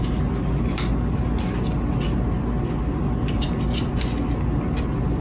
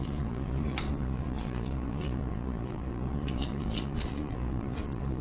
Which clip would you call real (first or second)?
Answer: first